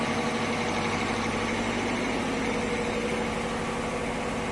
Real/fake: real